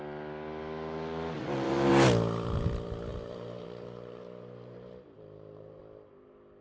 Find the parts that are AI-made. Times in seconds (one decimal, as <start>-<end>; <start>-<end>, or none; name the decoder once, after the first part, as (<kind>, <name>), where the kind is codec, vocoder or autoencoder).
1.4-1.9 (vocoder, BigVGAN v2); 3.1-5.8